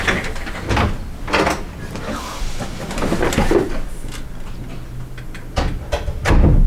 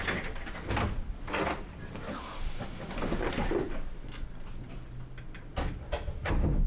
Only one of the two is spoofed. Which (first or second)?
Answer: second